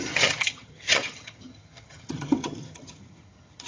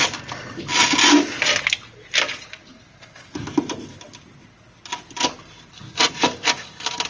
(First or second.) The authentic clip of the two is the second